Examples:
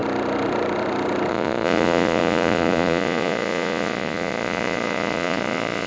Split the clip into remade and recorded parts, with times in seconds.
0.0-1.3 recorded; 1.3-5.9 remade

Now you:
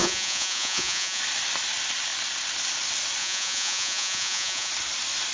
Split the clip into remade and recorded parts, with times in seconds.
0.0-1.2 remade; 1.2-3.2 recorded; 3.2-4.7 remade; 4.7-5.3 recorded

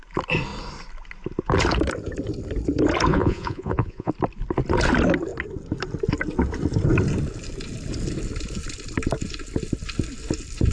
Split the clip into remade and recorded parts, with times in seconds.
0.0-3.1 recorded; 3.1-4.1 remade; 4.1-10.7 recorded

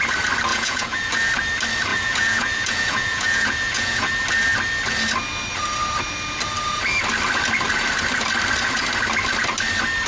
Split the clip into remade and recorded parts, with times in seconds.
0.0-0.5 recorded; 0.5-1.1 remade; 1.1-1.9 recorded; 1.9-4.1 remade; 4.1-10.1 recorded

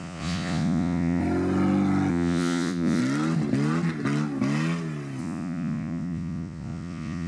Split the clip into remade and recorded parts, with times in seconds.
0.0-1.2 remade; 1.2-2.1 recorded; 2.1-3.0 remade; 3.0-5.2 recorded; 5.2-7.3 remade

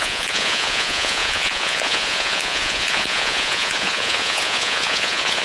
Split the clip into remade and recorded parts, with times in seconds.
0.0-5.4 remade

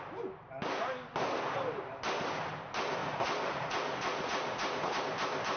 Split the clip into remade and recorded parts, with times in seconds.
0.0-3.0 recorded; 3.0-5.0 remade; 5.0-5.6 recorded